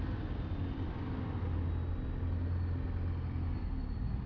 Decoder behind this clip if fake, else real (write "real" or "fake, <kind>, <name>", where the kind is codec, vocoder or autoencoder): real